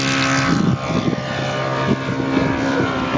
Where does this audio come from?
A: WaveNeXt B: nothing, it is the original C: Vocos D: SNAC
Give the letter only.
B